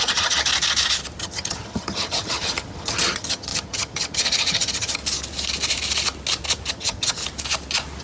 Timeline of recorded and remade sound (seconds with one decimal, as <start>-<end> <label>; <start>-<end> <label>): 0.0-0.5 remade; 0.5-1.2 recorded; 1.2-5.0 remade; 5.0-6.7 recorded; 6.7-7.2 remade; 7.2-8.0 recorded